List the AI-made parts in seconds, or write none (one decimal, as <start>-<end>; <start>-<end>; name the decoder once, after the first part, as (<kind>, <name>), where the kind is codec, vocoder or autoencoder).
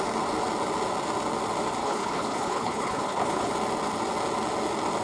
1.8-3.5 (codec, HILCodec)